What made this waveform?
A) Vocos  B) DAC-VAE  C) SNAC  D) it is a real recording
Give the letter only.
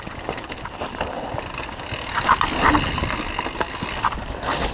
D